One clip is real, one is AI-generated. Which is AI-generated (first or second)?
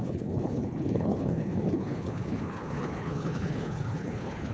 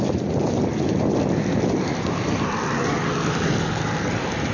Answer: first